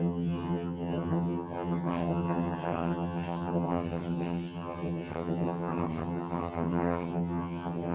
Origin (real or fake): fake